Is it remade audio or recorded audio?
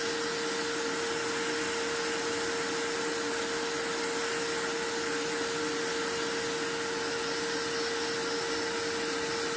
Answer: recorded